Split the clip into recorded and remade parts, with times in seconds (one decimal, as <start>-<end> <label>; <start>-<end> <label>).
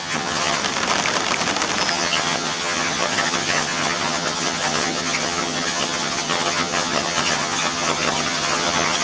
0.0-0.6 remade; 0.6-1.9 recorded; 1.9-9.0 remade